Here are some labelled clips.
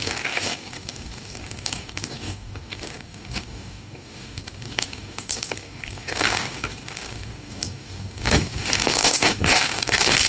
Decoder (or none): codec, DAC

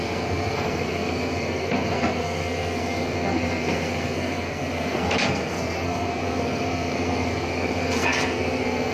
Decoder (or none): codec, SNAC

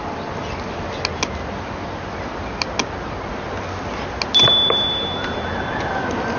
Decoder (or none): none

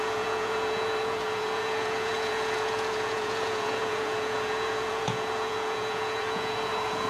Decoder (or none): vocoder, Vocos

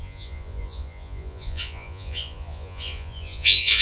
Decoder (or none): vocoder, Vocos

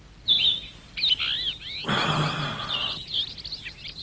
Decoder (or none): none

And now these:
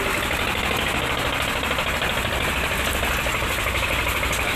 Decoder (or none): none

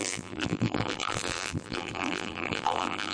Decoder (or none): vocoder, BigVGAN v2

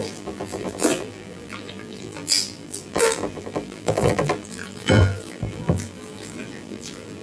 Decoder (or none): vocoder, BigVGAN v2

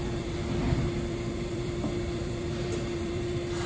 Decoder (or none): vocoder, BigVGAN v2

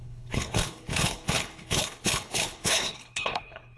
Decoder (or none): codec, HILCodec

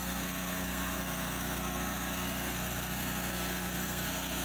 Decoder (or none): codec, SNAC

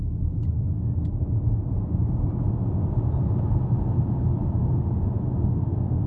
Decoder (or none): none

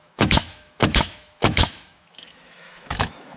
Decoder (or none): autoencoder, DAC-VAE